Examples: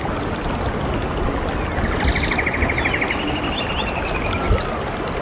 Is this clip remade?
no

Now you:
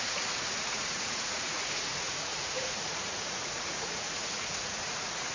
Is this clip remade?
yes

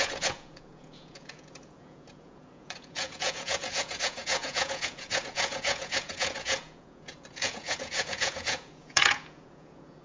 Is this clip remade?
yes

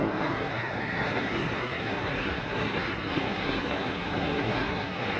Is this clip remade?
yes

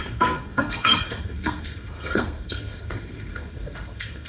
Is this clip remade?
yes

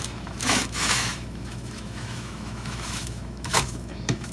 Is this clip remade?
yes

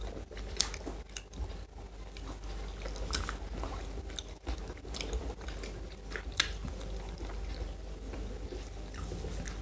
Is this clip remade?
no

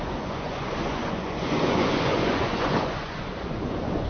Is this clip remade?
yes